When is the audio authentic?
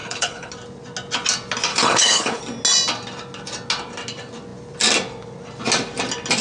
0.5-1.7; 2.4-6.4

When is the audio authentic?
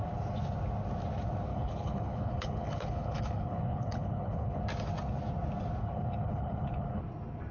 0.0-1.5; 4.6-5.8; 7.0-7.5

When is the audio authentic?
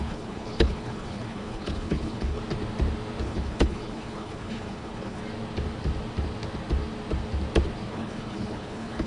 2.4-3.2; 5.2-7.9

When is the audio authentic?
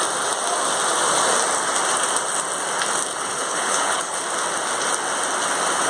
0.0-3.1; 4.2-5.9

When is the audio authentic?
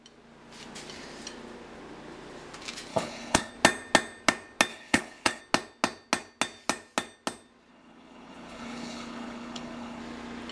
0.0-2.9; 3.5-4.7; 5.4-7.7; 10.0-10.5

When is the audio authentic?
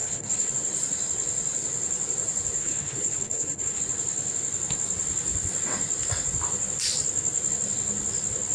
0.5-2.6; 3.8-8.5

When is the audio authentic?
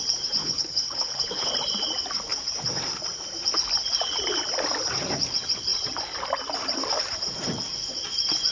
0.0-0.4; 1.5-8.5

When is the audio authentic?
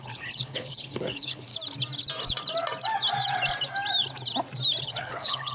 1.5-4.8